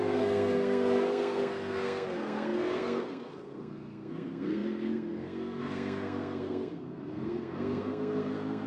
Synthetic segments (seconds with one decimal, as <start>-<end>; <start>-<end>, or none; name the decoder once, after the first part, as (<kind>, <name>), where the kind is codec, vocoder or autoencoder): 0.0-8.7 (codec, SNAC)